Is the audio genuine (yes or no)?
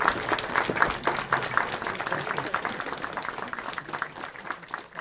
yes